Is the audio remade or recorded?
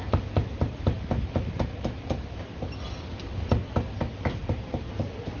recorded